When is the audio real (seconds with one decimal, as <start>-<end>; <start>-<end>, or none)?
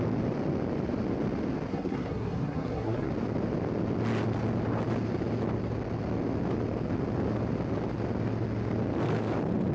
0.0-1.7; 3.1-9.7